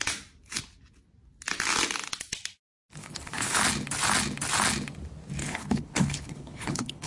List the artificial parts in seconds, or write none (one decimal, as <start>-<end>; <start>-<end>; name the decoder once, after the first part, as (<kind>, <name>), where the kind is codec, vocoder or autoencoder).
3.0-3.6 (codec, HILCodec); 5.4-7.1